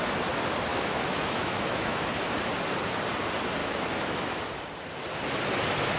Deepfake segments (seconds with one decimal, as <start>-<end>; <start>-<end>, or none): 0.7-2.1; 3.6-4.7